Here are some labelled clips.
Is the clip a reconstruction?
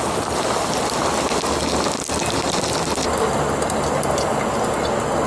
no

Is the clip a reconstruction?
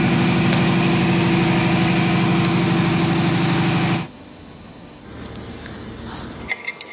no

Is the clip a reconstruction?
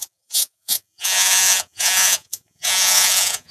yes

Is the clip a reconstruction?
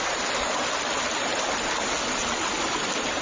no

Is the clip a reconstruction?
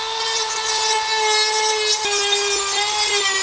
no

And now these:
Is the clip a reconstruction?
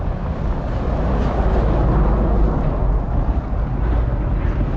no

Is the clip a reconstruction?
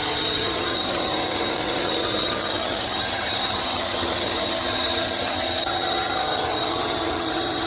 yes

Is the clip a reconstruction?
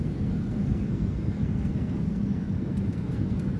yes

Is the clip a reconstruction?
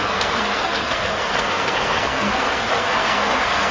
yes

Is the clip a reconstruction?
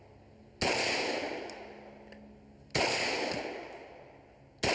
no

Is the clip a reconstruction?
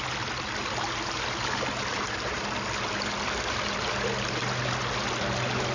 no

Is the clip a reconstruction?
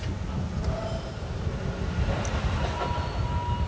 no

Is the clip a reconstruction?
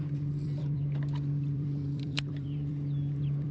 yes